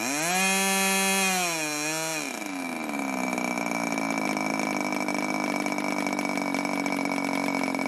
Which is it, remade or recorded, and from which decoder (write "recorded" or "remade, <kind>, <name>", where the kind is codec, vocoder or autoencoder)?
recorded